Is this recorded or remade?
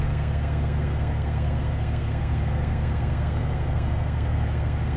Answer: remade